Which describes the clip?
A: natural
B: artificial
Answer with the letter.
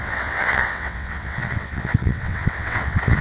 B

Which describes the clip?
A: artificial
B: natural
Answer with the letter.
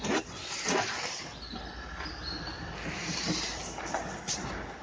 B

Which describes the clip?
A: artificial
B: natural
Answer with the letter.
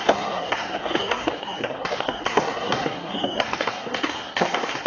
A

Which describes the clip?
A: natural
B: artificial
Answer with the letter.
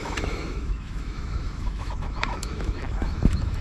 B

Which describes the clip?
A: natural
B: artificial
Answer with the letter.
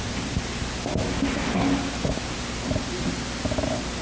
A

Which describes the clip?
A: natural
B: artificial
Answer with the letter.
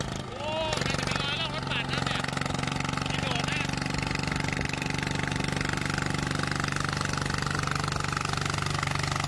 A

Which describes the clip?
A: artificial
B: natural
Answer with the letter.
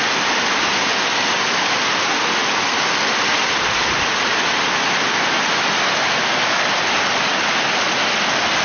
B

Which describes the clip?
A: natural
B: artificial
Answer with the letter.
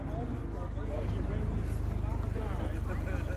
A